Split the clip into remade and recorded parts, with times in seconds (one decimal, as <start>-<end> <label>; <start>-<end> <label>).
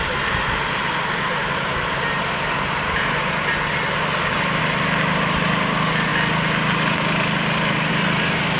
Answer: 0.0-8.6 recorded